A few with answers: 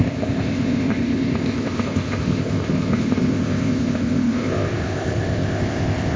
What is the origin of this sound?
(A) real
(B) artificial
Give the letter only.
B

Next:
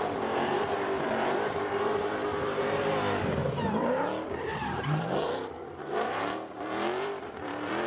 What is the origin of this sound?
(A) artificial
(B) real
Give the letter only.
A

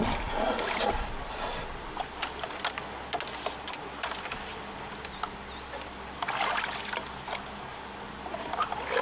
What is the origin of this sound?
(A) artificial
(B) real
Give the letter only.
B